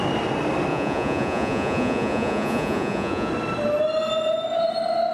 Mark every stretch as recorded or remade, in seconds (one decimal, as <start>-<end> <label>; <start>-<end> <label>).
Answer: 0.0-0.7 recorded; 0.7-3.3 remade; 3.3-5.1 recorded